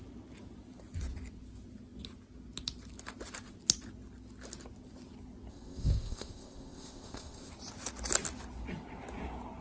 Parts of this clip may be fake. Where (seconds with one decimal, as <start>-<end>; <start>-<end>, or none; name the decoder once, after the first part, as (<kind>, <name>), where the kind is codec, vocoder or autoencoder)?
5.5-7.5 (codec, ZipCodec)